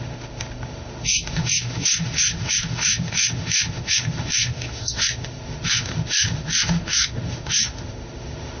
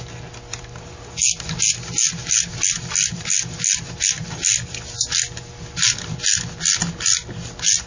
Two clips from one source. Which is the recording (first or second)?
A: second